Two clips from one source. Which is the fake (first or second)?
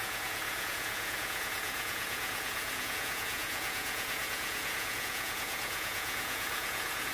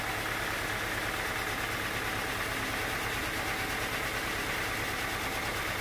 first